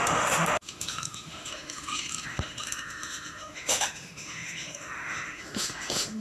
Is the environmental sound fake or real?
fake